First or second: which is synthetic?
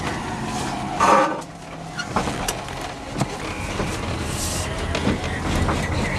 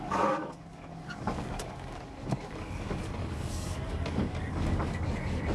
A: second